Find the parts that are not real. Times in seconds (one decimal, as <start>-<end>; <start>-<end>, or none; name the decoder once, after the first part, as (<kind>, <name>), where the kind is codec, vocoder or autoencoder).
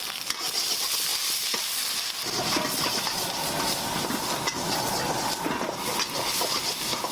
none